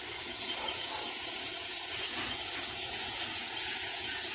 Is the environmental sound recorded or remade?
remade